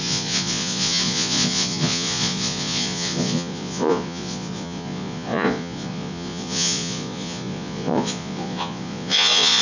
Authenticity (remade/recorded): remade